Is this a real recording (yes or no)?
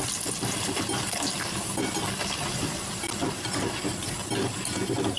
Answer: yes